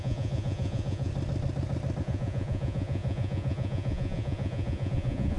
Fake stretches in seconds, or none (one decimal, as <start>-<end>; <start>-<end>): 0.0-1.1; 2.0-5.4